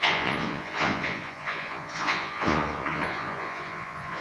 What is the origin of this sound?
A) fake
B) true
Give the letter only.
A